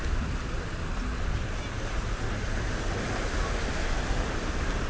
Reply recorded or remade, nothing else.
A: recorded